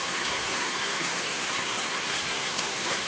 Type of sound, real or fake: fake